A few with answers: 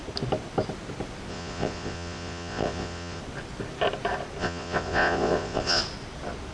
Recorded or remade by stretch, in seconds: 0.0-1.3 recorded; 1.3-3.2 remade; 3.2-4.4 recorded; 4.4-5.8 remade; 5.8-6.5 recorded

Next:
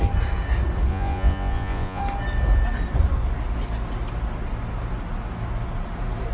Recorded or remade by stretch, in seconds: 0.0-0.9 recorded; 0.9-2.0 remade; 2.0-6.3 recorded

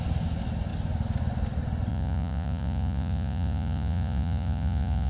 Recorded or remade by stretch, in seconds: 0.0-1.9 recorded; 1.9-5.1 remade

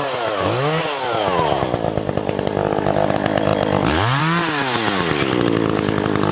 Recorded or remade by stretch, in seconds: 0.0-6.3 recorded

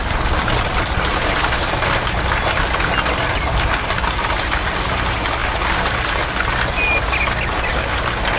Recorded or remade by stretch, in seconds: 0.0-8.4 recorded